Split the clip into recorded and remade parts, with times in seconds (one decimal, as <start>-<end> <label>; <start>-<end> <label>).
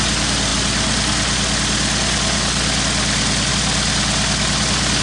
0.0-5.0 recorded